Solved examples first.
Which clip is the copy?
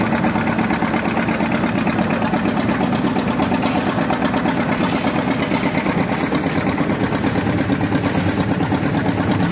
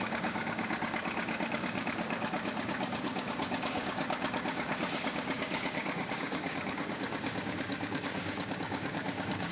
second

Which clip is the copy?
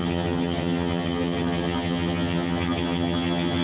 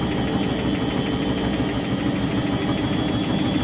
first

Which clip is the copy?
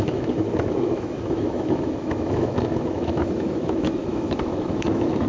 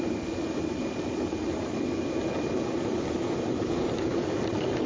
first